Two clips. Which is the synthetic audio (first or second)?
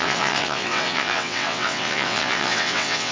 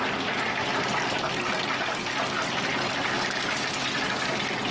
first